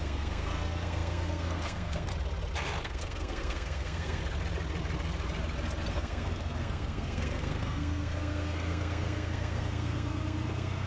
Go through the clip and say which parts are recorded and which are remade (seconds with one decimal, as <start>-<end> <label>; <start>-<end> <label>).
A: 0.0-2.1 remade; 2.1-2.8 recorded; 2.8-4.2 remade; 4.2-5.9 recorded; 5.9-10.9 remade